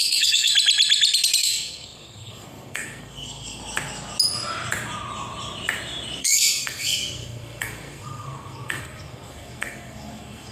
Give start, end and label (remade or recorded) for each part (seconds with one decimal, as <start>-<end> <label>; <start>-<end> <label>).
0.0-0.5 remade; 0.5-1.4 recorded; 1.4-3.6 remade; 3.6-6.2 recorded; 6.2-10.5 remade